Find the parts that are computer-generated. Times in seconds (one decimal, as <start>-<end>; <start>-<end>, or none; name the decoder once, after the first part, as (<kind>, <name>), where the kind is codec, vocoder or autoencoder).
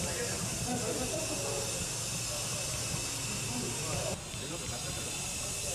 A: none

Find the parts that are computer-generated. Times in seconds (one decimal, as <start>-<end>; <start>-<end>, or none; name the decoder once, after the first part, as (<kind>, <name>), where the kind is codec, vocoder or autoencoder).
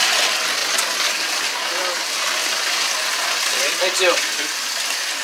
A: 0.6-1.4 (vocoder, BigVGAN v2)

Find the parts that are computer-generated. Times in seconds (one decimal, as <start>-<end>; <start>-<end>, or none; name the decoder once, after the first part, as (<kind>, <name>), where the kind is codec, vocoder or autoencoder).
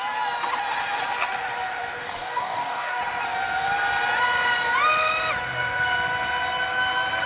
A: 2.0-3.0 (codec, DAC)